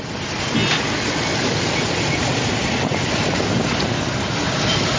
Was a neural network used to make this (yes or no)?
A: no